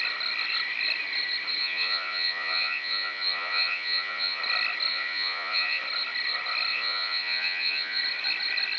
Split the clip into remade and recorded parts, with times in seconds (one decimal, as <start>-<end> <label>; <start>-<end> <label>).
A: 0.0-1.6 recorded; 1.6-4.4 remade; 4.4-4.9 recorded; 4.9-5.8 remade; 5.8-6.7 recorded; 6.7-8.0 remade; 8.0-8.8 recorded